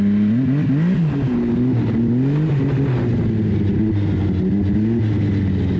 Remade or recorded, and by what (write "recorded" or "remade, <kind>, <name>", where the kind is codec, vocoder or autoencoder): recorded